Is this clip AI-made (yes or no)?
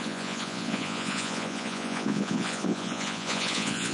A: yes